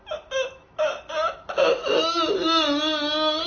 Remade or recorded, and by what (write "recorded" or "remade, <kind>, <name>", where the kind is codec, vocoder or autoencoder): recorded